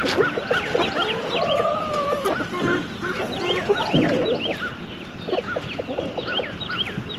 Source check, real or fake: real